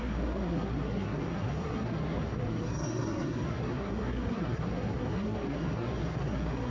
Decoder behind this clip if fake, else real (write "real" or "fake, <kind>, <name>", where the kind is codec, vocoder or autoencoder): fake, codec, SNAC